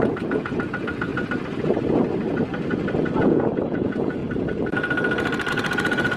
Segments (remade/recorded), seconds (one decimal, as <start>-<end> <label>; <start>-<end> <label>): 0.0-1.1 remade; 1.1-3.2 recorded; 3.2-4.2 remade; 4.2-5.5 recorded; 5.5-6.2 remade